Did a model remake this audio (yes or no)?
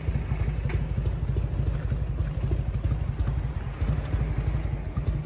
no